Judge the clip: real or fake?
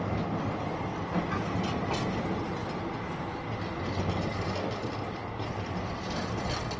real